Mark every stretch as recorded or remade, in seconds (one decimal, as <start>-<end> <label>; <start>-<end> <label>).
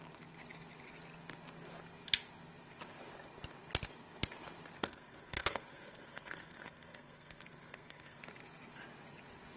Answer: 0.0-4.8 recorded; 4.8-8.2 remade; 8.2-9.6 recorded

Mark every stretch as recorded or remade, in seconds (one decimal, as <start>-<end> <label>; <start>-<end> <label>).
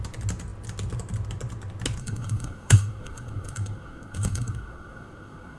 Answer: 0.0-2.0 recorded; 2.0-5.6 remade